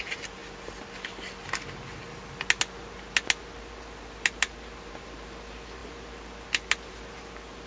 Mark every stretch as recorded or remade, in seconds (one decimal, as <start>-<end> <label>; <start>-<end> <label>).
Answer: 0.0-7.7 recorded